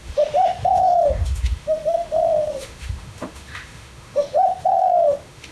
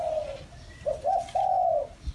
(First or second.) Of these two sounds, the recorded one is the second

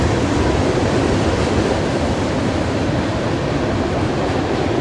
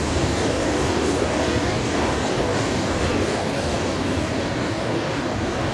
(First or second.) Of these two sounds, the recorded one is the first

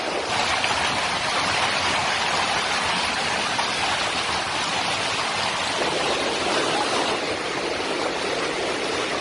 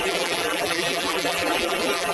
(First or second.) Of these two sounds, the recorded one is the first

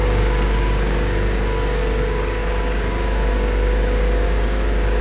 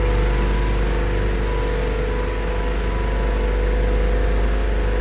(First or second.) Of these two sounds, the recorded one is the second